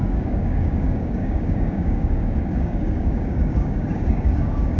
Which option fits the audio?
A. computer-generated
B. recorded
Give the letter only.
A